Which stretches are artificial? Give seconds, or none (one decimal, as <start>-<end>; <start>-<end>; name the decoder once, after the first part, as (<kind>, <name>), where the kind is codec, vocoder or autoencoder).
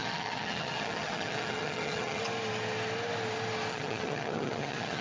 0.0-2.2 (vocoder, HiFi-GAN); 3.7-5.0